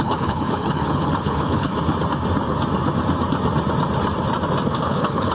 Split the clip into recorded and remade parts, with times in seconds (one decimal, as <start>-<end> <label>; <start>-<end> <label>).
0.0-1.7 remade; 1.7-4.8 recorded; 4.8-5.3 remade